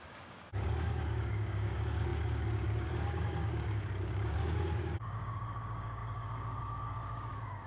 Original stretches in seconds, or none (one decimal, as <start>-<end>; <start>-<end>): none